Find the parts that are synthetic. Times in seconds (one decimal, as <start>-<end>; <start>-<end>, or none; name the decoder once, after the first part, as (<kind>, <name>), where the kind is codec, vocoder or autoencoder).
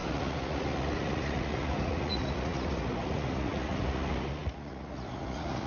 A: 0.0-5.7 (vocoder, Vocos)